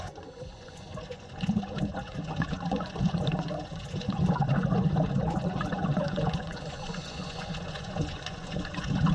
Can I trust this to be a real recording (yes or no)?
no